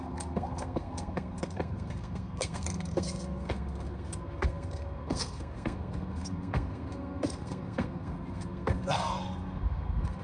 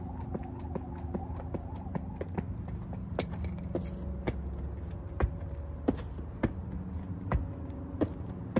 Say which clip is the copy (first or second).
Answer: first